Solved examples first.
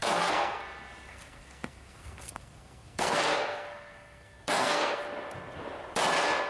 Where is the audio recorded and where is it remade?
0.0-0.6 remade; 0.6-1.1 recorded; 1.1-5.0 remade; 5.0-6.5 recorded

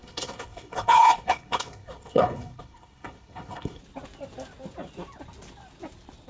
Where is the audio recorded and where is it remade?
0.0-3.8 remade; 3.8-6.3 recorded

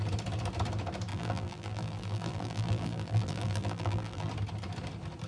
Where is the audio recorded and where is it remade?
0.0-1.1 recorded; 1.1-4.3 remade; 4.3-5.3 recorded

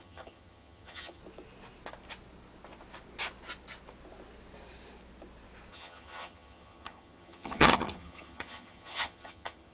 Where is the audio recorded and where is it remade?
0.0-1.2 remade; 1.2-5.7 recorded; 5.7-9.7 remade